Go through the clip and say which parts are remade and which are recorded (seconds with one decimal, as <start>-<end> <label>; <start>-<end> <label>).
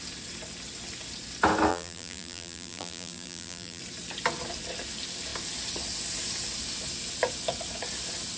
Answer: 0.0-1.7 recorded; 1.7-3.8 remade; 3.8-8.4 recorded